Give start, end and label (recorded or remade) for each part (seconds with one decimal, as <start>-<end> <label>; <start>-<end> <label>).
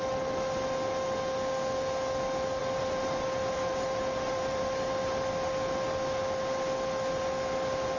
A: 0.0-2.6 recorded; 2.6-4.6 remade; 4.6-8.0 recorded